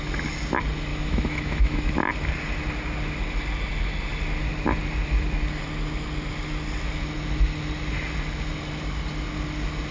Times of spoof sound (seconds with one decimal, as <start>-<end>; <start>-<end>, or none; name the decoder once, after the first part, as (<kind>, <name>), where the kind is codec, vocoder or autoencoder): 0.9-1.9 (autoencoder, DAC-VAE)